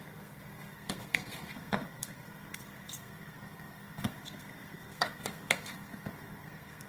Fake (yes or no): yes